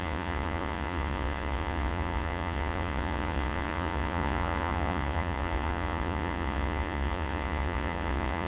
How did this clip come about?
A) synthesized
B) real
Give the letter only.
A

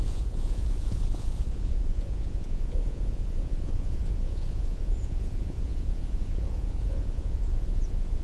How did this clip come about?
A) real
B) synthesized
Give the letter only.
B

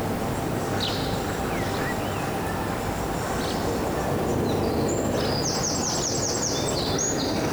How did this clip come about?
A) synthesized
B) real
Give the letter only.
B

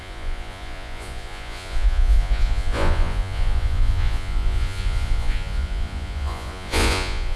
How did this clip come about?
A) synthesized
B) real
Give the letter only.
A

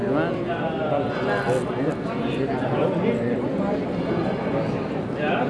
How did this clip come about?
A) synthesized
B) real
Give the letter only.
B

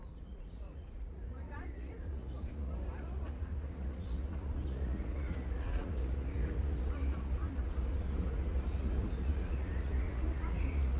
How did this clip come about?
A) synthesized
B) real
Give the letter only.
A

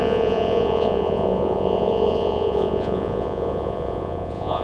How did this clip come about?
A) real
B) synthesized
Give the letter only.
B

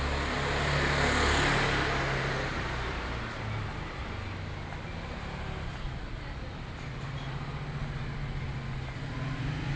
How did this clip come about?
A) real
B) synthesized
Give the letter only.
A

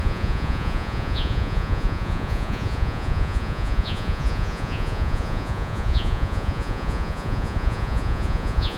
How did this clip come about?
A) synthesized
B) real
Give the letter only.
A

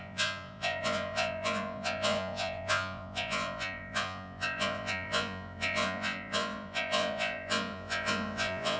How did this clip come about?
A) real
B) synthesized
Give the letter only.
B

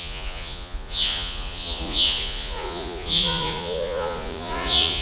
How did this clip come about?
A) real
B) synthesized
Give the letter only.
B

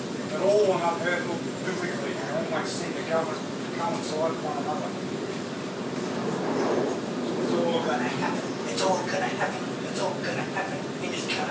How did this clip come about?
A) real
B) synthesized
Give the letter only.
A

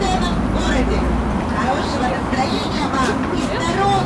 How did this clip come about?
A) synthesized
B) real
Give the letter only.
B